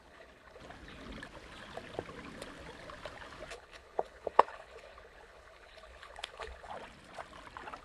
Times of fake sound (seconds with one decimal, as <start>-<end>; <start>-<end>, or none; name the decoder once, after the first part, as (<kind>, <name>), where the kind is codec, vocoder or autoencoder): 0.0-0.6 (codec, HILCodec); 3.5-6.7